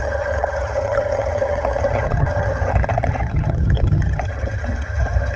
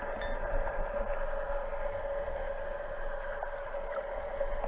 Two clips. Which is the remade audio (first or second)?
first